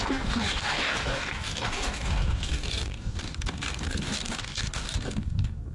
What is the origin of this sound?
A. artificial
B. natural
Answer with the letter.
A